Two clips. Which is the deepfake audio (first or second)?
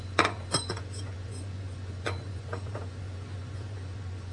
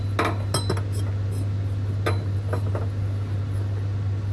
first